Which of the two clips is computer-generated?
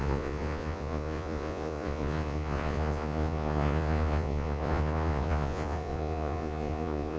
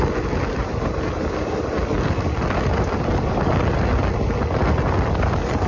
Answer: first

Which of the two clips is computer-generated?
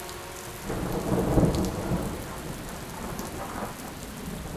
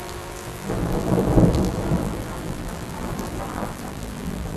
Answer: second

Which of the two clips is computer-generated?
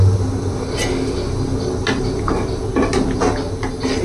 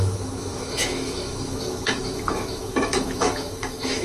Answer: second